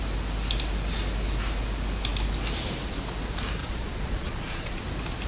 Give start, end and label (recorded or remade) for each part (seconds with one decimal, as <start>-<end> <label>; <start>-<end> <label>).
0.0-3.6 recorded; 3.6-4.8 remade; 4.8-5.3 recorded